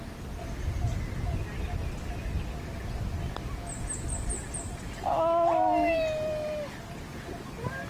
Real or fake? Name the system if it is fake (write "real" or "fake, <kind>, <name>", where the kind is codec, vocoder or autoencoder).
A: real